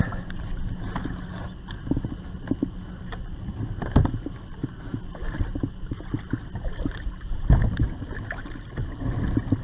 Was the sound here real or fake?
real